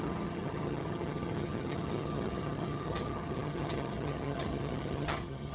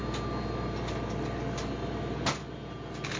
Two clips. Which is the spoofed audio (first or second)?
first